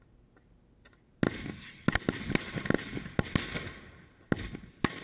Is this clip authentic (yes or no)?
yes